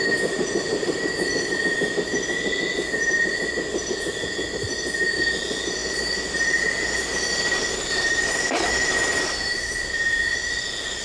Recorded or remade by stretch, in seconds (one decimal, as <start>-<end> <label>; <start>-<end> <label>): 0.0-0.7 recorded; 0.7-1.6 remade; 1.6-5.8 recorded; 5.8-9.5 remade; 9.5-11.0 recorded